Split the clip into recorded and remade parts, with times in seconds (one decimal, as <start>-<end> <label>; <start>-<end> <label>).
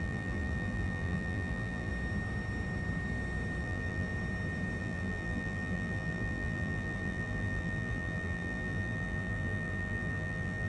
0.0-1.9 remade; 1.9-3.6 recorded; 3.6-4.1 remade; 4.1-4.8 recorded; 4.8-10.7 remade